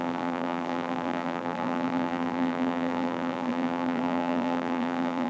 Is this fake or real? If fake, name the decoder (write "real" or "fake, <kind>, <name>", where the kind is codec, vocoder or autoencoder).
fake, vocoder, BigVGAN v2